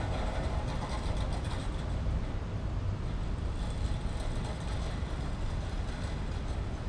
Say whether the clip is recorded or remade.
recorded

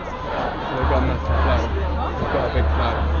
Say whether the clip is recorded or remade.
recorded